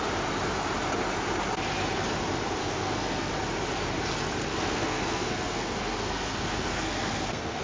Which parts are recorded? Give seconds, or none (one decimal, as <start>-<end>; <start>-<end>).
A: 0.0-2.6; 3.3-4.4